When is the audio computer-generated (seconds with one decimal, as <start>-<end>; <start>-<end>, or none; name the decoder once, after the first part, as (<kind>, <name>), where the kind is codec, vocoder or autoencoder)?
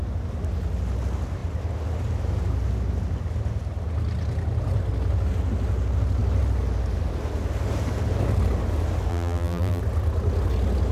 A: 9.1-9.8 (vocoder, BigVGAN v2)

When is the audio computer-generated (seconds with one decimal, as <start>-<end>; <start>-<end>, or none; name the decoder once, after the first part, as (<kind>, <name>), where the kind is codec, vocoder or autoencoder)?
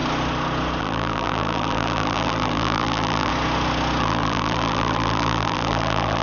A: 0.8-3.3 (vocoder, BigVGAN v2); 4.0-6.2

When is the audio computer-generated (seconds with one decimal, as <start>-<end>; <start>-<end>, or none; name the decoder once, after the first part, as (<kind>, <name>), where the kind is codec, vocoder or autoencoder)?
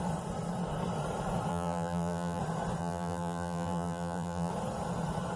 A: 1.5-2.4 (vocoder, BigVGAN v2); 2.8-4.5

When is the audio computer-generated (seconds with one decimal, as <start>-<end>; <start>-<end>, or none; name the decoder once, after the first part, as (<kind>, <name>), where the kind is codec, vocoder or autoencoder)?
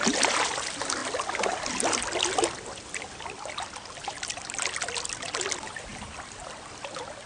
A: 5.9-6.4 (vocoder, BigVGAN v2)